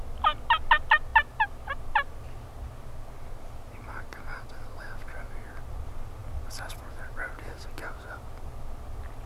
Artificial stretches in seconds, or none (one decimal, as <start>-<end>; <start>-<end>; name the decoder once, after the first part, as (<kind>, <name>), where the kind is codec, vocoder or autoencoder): none